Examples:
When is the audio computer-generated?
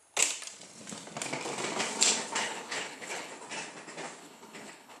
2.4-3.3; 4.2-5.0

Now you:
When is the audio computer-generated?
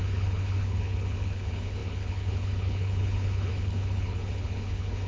0.0-5.1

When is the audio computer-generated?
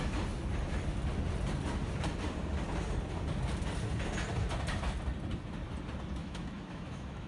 6.2-7.3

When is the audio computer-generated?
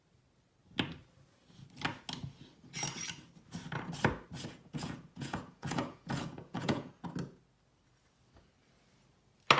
4.5-6.9